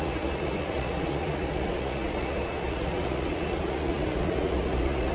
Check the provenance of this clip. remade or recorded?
remade